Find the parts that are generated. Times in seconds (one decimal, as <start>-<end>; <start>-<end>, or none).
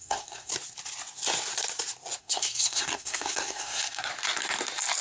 0.0-0.5; 2.2-4.1